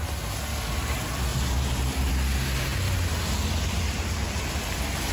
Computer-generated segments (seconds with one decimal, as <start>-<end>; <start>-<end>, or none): 1.3-2.1